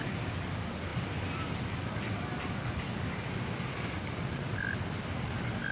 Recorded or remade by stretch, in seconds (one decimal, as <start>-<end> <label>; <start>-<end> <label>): 0.0-5.7 recorded